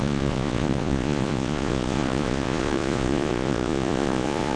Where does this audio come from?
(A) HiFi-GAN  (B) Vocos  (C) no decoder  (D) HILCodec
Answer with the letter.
B